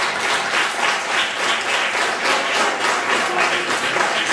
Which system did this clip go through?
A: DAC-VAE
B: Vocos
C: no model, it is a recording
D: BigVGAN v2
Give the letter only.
C